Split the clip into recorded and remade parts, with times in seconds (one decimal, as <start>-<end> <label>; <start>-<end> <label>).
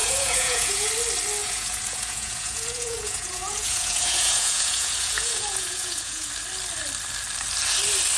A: 0.0-0.9 remade; 0.9-1.4 recorded; 1.4-6.3 remade; 6.3-8.2 recorded